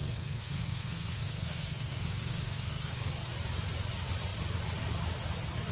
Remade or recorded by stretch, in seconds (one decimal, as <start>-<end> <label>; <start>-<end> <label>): 0.0-3.1 remade; 3.1-5.7 recorded